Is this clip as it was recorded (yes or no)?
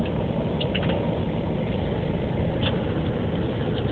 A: yes